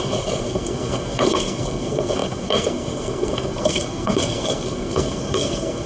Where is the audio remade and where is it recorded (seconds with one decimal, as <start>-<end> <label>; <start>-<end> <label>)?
0.0-5.9 remade